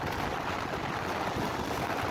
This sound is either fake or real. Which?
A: real